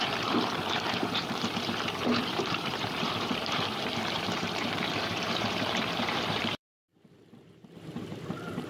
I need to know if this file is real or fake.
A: fake